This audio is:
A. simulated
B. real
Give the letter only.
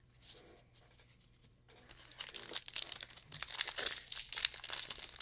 B